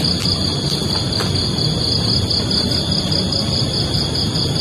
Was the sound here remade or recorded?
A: recorded